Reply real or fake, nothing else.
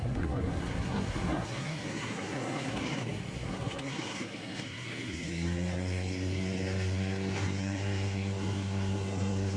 fake